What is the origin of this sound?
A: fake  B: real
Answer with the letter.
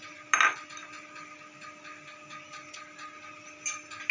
B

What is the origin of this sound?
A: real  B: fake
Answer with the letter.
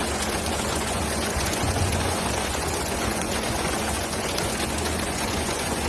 B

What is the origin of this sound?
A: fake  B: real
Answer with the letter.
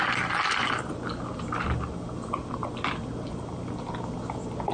B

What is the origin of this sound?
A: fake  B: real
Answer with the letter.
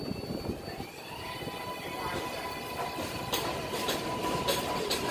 B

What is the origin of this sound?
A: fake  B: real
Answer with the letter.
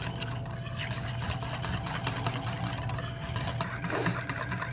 B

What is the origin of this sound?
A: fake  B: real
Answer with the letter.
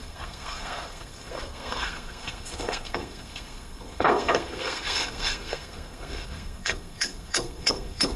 A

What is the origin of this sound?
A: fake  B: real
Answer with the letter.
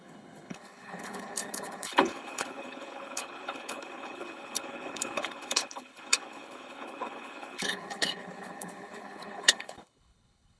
A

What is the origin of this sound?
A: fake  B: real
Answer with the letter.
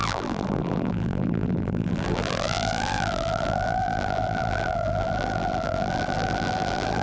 A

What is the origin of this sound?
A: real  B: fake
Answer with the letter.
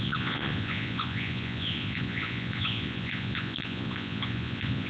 B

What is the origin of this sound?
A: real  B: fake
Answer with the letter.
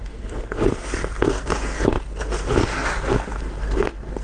B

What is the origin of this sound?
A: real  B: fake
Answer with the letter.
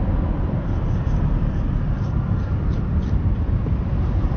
B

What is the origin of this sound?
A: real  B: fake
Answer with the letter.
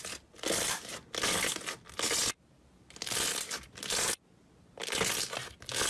A